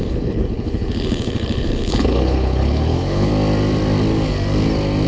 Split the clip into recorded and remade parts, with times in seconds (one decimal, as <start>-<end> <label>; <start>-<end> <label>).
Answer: 0.0-3.3 remade; 3.3-5.1 recorded